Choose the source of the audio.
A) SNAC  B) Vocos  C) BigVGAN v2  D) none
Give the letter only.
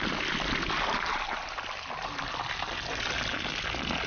D